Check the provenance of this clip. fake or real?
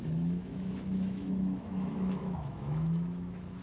fake